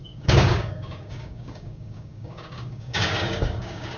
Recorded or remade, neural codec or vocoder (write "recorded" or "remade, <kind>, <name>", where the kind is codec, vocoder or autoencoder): remade, codec, DAC